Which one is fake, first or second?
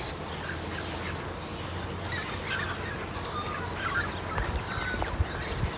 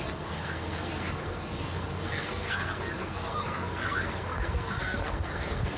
second